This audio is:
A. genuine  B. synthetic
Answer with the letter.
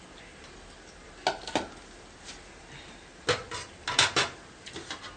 A